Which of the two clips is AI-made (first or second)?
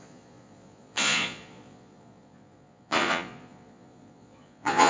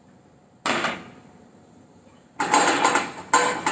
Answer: first